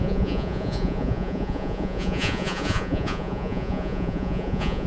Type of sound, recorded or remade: remade